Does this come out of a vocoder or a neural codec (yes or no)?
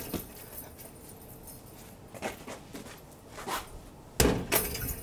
no